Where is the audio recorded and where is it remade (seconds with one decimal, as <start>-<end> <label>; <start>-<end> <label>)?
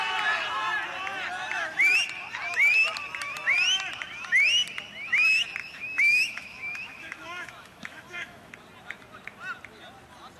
0.0-5.6 recorded; 5.6-8.5 remade; 8.5-10.4 recorded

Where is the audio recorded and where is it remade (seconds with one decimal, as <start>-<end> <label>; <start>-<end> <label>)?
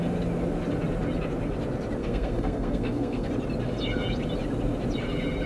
0.0-2.0 recorded; 2.0-3.3 remade; 3.3-5.5 recorded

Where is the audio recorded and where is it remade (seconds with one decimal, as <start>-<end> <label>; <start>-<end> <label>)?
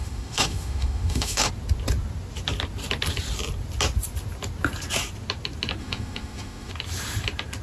0.0-1.5 remade; 1.5-5.8 recorded; 5.8-6.7 remade; 6.7-7.6 recorded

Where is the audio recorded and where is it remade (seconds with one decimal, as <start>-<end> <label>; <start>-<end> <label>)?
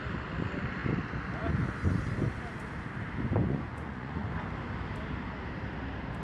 0.0-3.4 recorded; 3.4-4.3 remade; 4.3-6.2 recorded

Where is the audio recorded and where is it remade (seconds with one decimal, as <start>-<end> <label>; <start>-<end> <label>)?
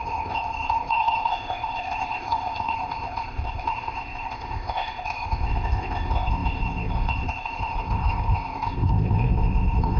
0.0-10.0 remade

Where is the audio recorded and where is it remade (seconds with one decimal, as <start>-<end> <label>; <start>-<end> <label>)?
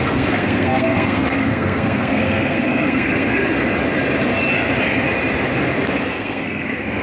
0.0-3.4 remade; 3.4-6.0 recorded; 6.0-7.0 remade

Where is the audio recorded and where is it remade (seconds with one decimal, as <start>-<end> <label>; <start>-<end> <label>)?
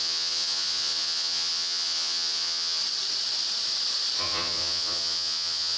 0.0-2.8 remade; 2.8-4.2 recorded; 4.2-5.8 remade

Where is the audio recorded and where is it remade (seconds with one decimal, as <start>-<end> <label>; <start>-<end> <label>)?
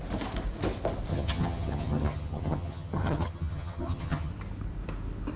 0.0-1.1 recorded; 1.1-4.3 remade; 4.3-5.4 recorded